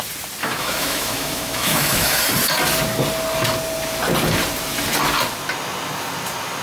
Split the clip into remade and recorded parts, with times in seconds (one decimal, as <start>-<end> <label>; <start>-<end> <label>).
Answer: 0.0-0.4 recorded; 0.4-2.2 remade; 2.2-6.6 recorded